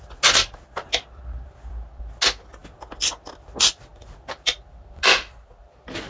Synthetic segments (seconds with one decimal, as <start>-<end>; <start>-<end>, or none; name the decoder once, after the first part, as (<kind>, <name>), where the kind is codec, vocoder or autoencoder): none